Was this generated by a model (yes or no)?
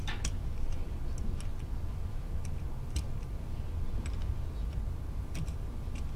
no